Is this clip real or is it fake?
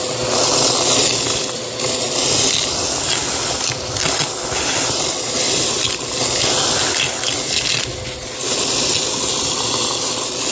real